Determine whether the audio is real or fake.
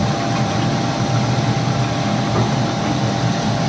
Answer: real